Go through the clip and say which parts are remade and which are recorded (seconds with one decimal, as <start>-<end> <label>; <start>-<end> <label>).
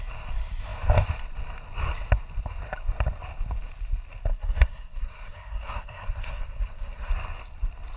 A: 0.0-4.3 recorded; 4.3-7.1 remade; 7.1-8.0 recorded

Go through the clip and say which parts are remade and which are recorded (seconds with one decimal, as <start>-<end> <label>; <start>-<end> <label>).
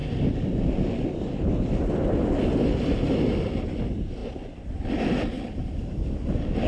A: 0.0-6.7 recorded